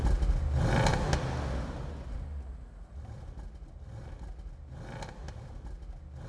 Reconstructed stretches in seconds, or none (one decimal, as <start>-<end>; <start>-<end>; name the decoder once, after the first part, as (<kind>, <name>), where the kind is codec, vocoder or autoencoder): none

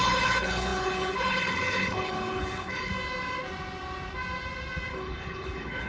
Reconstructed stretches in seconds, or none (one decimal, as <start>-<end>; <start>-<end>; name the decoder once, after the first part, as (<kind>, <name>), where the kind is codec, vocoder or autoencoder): 0.0-2.9 (codec, HILCodec); 4.9-5.9

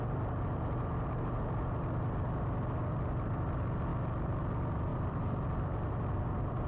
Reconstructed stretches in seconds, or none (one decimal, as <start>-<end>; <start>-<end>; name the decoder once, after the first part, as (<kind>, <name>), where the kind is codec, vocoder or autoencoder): 4.9-5.9 (vocoder, BigVGAN v2)

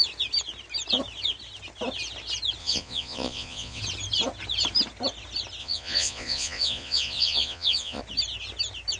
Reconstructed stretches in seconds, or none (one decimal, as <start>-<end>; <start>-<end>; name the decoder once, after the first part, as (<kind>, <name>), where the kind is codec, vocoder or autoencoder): 2.6-3.8 (vocoder, Vocos); 5.6-8.0

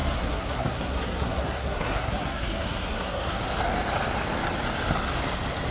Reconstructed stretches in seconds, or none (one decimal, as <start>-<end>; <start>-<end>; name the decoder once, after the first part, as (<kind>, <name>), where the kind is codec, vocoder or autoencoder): 0.0-3.4 (codec, SNAC)

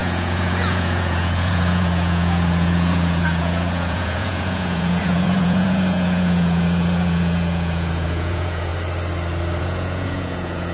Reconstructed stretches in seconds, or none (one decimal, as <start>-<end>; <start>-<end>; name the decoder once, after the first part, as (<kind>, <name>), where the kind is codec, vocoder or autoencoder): 0.0-8.7 (vocoder, Vocos); 9.6-10.7